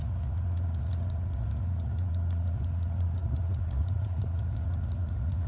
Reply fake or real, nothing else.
fake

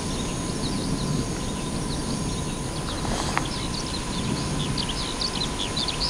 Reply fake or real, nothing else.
real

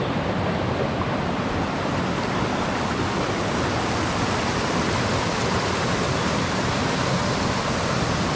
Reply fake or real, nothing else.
real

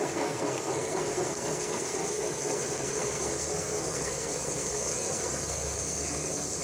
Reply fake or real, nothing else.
fake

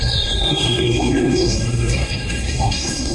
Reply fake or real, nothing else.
fake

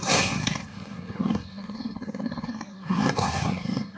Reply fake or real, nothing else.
fake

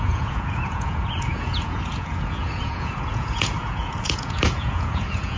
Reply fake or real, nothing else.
fake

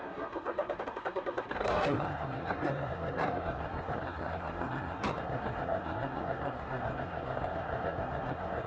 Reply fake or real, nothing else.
fake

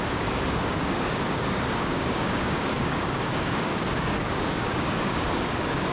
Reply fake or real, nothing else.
fake